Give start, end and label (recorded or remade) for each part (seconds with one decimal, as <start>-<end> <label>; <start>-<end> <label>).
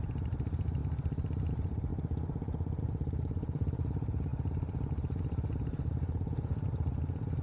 0.0-7.4 recorded